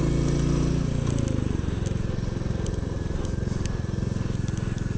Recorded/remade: recorded